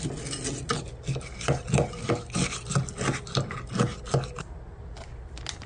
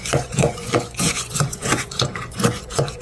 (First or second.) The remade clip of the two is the second